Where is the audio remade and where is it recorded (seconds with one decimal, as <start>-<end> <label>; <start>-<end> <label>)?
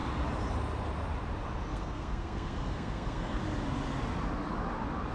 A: 0.0-1.7 recorded; 1.7-3.4 remade; 3.4-5.1 recorded